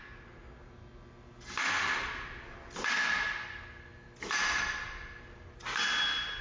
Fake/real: real